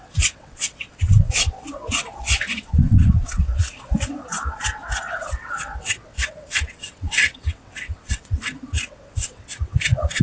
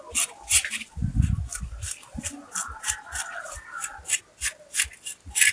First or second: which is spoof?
first